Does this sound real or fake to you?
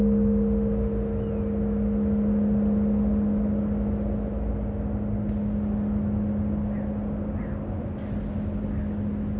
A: real